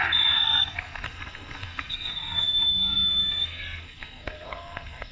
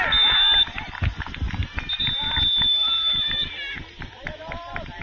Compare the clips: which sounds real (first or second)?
second